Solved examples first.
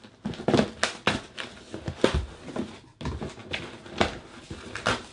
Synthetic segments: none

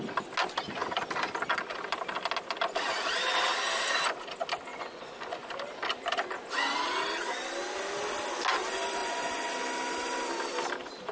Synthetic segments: 4.7-5.5 (vocoder, Vocos); 9.0-9.5

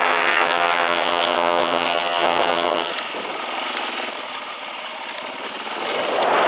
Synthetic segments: 0.0-2.9 (vocoder, HiFi-GAN)